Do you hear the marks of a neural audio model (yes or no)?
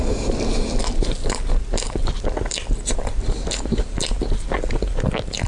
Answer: no